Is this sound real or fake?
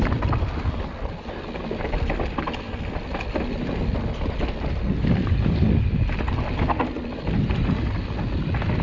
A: real